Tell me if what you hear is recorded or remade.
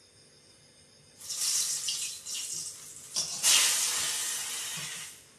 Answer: recorded